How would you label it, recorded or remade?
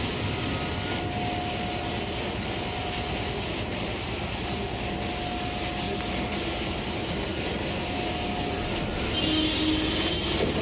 recorded